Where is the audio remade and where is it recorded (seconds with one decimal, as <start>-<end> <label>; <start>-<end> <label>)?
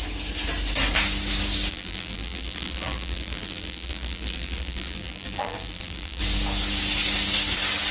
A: 0.0-1.7 recorded; 1.7-6.2 remade; 6.2-7.9 recorded